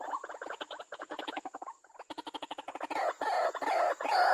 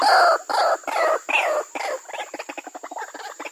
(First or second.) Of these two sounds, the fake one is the first